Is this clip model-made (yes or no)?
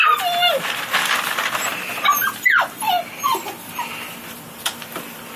no